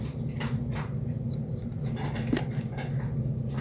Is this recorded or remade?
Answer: recorded